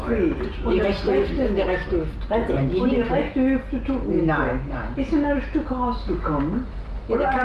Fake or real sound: real